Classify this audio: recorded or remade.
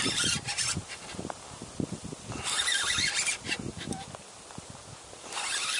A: recorded